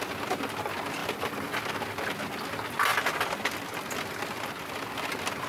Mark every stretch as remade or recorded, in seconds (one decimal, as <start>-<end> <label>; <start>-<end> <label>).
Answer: 0.0-1.0 recorded; 1.0-1.6 remade; 1.6-2.9 recorded; 2.9-4.9 remade; 4.9-5.5 recorded